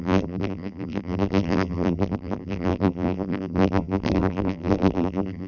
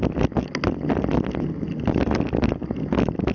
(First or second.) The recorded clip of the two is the second